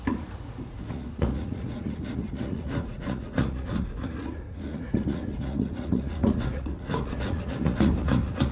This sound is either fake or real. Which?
fake